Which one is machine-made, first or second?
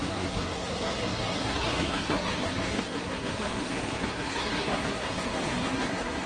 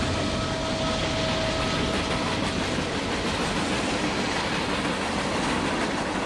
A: first